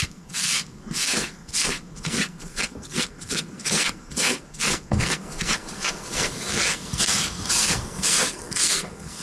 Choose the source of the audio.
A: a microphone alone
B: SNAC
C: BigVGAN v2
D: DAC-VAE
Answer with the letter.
B